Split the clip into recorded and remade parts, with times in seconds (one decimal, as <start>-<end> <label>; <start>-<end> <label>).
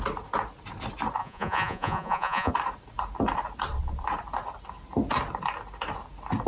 0.0-1.2 recorded; 1.2-2.5 remade; 2.5-6.5 recorded